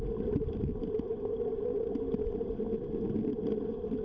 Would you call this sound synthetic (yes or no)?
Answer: no